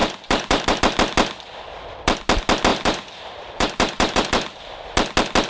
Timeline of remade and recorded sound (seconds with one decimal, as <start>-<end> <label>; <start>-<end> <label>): 0.0-0.8 remade; 0.8-2.7 recorded; 2.7-4.6 remade; 4.6-5.5 recorded